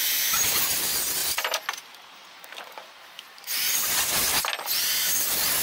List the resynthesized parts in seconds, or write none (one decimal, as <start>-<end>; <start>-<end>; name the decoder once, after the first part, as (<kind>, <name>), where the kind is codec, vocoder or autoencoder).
1.2-4.4 (vocoder, BigVGAN v2)